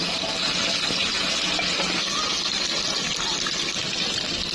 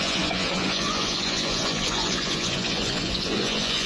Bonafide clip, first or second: first